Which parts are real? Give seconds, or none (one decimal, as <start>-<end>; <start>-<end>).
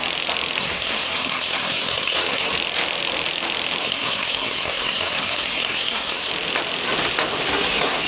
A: 0.0-0.6; 2.5-3.8; 6.3-7.5